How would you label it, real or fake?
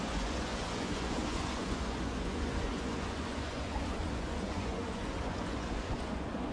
fake